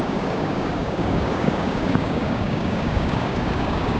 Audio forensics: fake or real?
fake